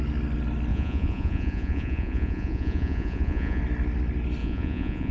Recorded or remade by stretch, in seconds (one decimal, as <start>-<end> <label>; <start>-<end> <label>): 0.0-0.7 recorded; 0.7-3.6 remade; 3.6-4.4 recorded; 4.4-5.1 remade

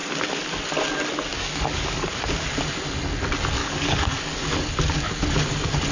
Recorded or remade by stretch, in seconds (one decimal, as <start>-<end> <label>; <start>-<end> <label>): 0.0-1.3 recorded; 1.3-2.1 remade; 2.1-3.6 recorded; 3.6-4.5 remade; 4.5-5.9 recorded

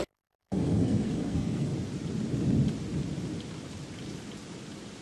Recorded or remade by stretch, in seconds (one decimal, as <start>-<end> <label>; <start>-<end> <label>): 0.0-1.7 remade; 1.7-5.0 recorded

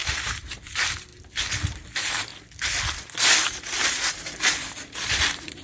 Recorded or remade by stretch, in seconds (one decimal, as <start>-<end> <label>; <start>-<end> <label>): 0.0-1.1 remade; 1.1-1.7 recorded; 1.7-2.3 remade; 2.3-3.4 recorded; 3.4-5.6 remade